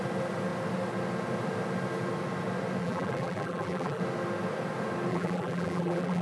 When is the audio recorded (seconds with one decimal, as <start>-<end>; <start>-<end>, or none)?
0.0-2.8; 4.0-5.1